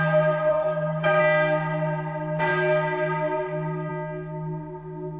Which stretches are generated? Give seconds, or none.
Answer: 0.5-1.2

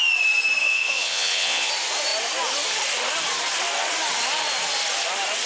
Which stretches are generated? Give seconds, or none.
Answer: 0.6-1.7

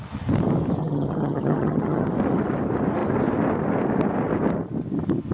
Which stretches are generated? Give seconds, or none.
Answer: 0.8-2.1

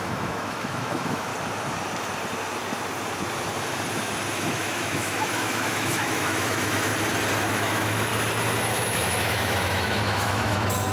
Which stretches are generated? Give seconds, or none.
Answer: 0.0-1.3; 4.3-6.9; 7.5-8.1; 8.7-10.9

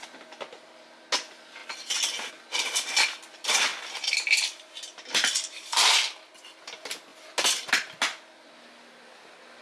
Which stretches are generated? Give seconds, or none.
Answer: none

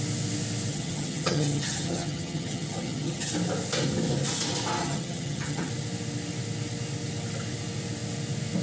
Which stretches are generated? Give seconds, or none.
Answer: 0.7-3.3; 4.8-5.7

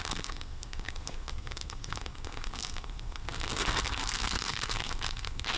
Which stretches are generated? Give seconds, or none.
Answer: 0.0-5.6